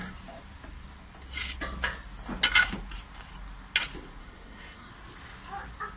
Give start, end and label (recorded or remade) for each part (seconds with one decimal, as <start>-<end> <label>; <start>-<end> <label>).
0.0-4.2 recorded; 4.2-4.9 remade; 4.9-6.0 recorded